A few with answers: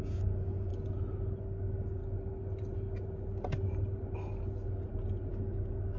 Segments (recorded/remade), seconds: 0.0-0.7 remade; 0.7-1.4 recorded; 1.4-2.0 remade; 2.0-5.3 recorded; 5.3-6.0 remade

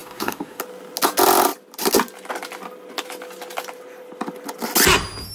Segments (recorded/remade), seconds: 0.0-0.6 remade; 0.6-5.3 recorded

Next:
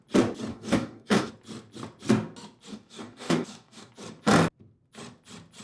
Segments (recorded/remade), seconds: 0.0-0.5 recorded; 0.5-1.3 remade; 1.3-2.7 recorded; 2.7-3.9 remade; 3.9-5.6 recorded

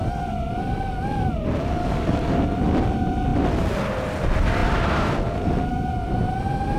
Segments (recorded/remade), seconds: 0.0-1.8 recorded; 1.8-2.4 remade; 2.4-6.8 recorded

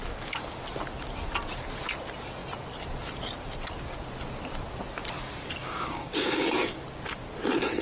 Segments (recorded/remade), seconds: 0.0-5.6 recorded; 5.6-6.8 remade; 6.8-7.8 recorded

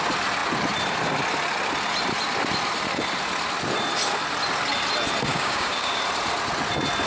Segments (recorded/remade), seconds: 0.0-5.3 recorded; 5.3-6.0 remade; 6.0-7.1 recorded

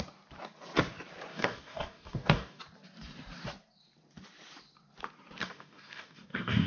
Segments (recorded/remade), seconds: 0.0-1.3 recorded; 1.3-2.6 remade; 2.6-5.4 recorded; 5.4-6.7 remade